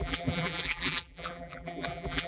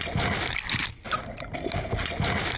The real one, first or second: second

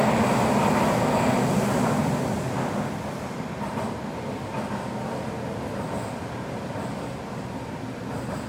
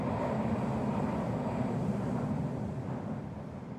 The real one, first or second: first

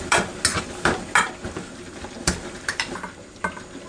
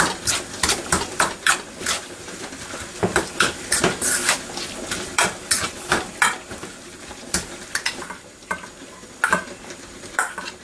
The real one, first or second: first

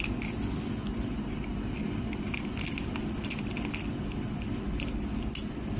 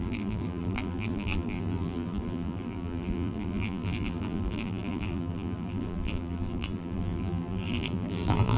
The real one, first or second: first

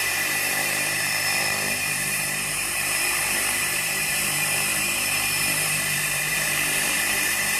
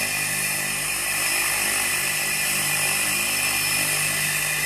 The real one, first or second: second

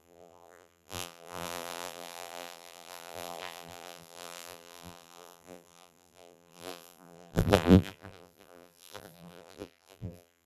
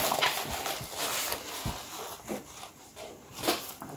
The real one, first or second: second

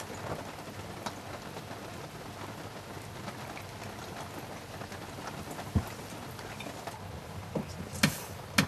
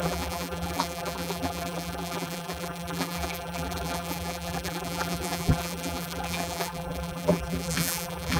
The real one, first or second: first